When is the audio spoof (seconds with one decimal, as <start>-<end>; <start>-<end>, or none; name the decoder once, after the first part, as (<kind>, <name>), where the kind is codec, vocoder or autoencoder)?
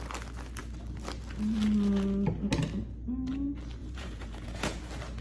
3.8-4.8 (vocoder, Vocos)